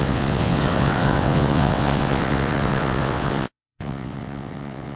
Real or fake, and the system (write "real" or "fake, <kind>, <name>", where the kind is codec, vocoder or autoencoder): fake, vocoder, WaveNeXt